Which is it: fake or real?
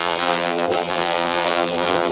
fake